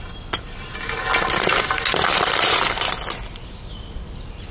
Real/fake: real